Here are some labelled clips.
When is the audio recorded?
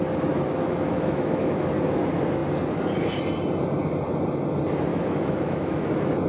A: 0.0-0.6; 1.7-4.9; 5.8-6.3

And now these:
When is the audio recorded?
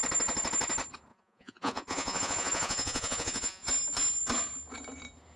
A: 0.0-1.1; 3.7-5.4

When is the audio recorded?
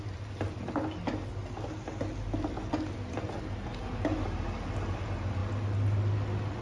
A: 0.0-6.6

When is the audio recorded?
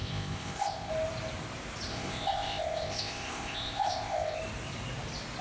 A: 0.9-1.9; 4.4-5.4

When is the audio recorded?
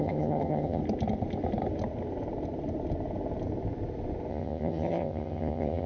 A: 0.8-4.3